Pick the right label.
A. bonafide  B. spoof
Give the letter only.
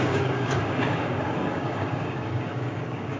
B